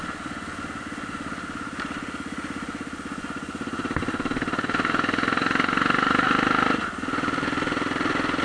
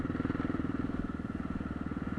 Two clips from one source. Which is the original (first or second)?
first